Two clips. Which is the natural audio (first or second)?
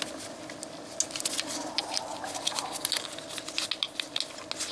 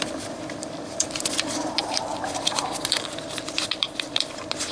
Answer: first